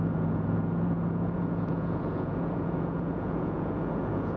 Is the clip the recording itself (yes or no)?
no